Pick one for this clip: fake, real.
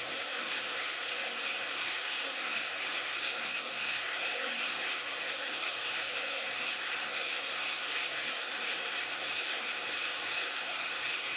fake